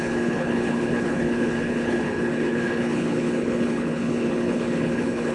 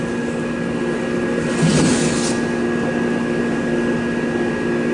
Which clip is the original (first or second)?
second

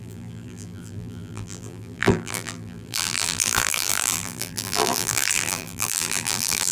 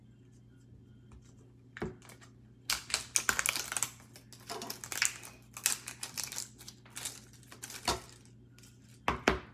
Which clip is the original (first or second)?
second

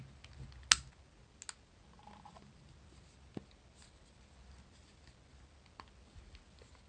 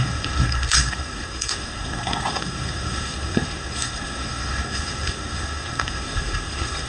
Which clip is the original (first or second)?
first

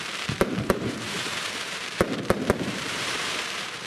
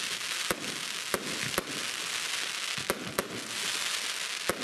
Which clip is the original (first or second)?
second